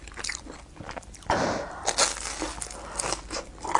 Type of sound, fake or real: real